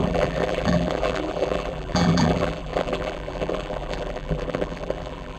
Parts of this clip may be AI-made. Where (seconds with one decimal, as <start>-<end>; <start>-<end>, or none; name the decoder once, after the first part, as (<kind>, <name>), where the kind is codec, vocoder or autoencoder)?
0.0-5.4 (vocoder, BigVGAN v2)